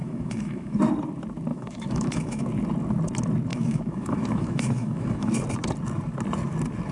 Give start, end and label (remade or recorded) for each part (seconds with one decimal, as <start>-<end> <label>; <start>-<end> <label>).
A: 0.0-0.8 remade; 0.8-1.5 recorded; 1.5-2.4 remade; 2.4-3.5 recorded; 3.5-5.3 remade; 5.3-6.9 recorded